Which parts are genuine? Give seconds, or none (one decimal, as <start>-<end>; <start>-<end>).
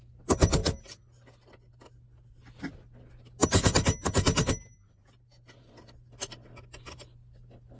0.0-7.8